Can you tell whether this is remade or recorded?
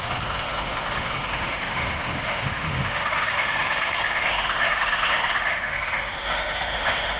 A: remade